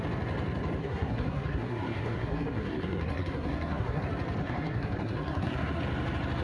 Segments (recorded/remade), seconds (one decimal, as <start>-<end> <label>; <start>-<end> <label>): 0.0-0.8 recorded; 0.8-4.0 remade; 4.0-4.4 recorded; 4.4-5.8 remade; 5.8-6.4 recorded